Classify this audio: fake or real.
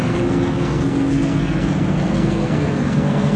fake